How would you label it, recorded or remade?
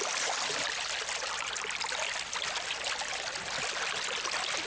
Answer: recorded